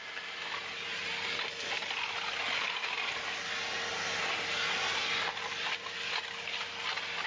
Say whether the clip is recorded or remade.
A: recorded